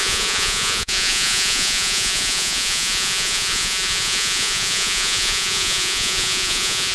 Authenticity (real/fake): fake